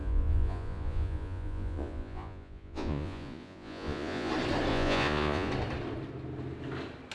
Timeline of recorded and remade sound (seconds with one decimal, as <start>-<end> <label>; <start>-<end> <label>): 0.0-4.3 remade; 4.3-4.7 recorded; 4.7-5.5 remade; 5.5-7.1 recorded